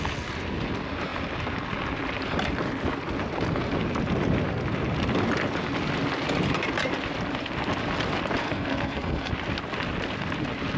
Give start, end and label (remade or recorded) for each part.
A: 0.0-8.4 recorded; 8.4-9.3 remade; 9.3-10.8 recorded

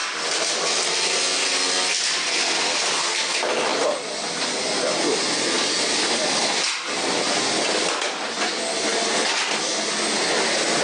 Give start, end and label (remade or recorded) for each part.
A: 0.0-10.8 recorded

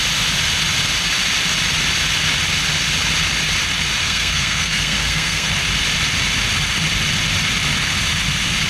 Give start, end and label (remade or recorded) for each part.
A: 0.0-4.0 recorded; 4.0-5.5 remade; 5.5-8.7 recorded

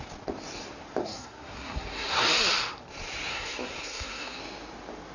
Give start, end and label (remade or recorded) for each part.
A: 0.0-1.0 recorded; 1.0-2.2 remade; 2.2-3.3 recorded; 3.3-4.4 remade; 4.4-5.1 recorded